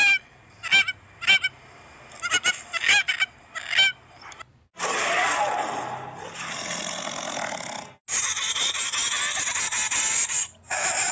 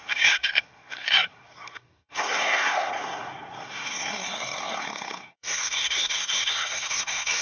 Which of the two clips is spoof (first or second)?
second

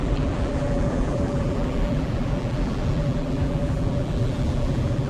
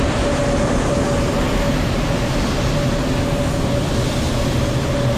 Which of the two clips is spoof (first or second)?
first